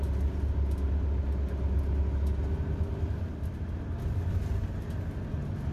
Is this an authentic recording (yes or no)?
yes